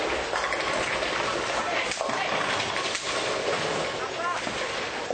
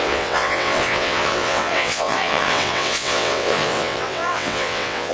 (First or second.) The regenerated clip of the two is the second